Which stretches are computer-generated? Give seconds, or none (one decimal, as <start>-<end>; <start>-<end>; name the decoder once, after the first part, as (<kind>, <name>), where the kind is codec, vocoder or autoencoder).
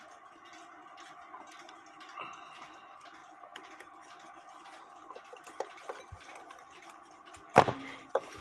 3.2-3.9 (vocoder, BigVGAN v2)